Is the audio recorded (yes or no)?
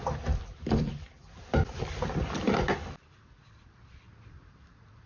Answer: no